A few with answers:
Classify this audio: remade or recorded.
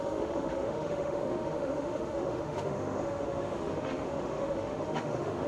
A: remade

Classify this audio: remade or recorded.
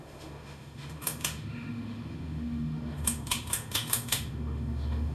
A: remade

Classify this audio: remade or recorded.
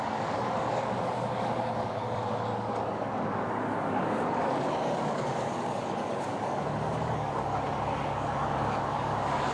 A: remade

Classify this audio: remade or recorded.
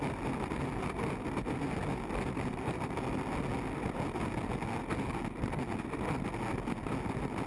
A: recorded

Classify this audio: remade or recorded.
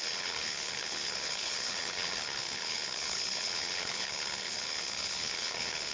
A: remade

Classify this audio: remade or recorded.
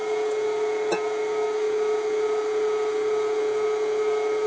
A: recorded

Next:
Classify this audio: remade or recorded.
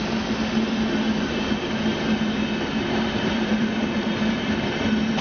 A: recorded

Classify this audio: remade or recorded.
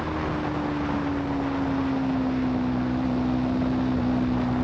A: recorded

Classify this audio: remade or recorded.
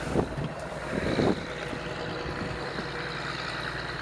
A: remade